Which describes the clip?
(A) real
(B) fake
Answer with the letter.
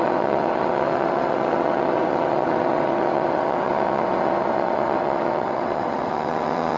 B